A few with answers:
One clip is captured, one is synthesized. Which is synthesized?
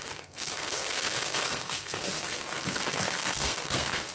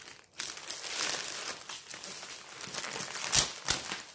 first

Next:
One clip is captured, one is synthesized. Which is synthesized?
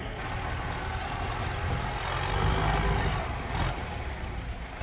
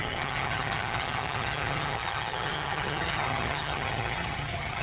second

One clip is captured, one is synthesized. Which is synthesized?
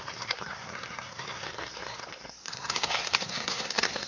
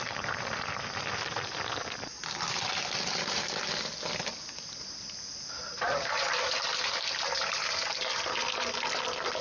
first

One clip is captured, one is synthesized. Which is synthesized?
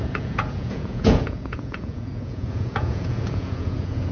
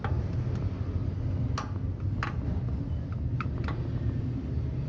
first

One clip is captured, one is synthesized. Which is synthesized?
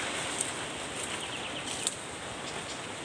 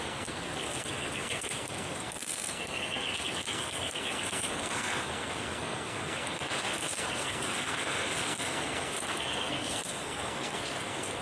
second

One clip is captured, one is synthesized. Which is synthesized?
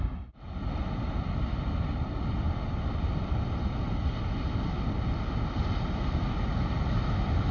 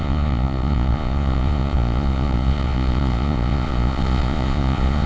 second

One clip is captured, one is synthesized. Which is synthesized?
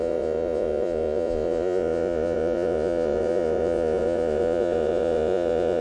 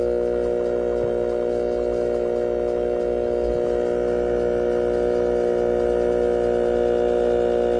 first